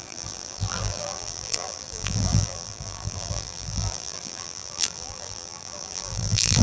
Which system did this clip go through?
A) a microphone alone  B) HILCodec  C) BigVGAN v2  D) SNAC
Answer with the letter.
C